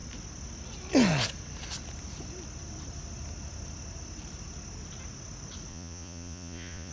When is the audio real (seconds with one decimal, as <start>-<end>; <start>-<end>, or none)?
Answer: 0.0-5.7